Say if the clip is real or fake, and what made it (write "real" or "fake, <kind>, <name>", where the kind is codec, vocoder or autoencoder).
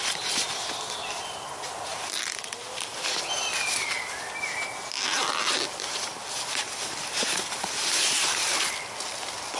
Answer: real